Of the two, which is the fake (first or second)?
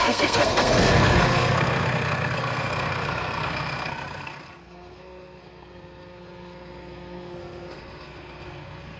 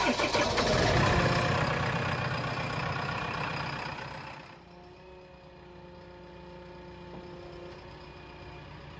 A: first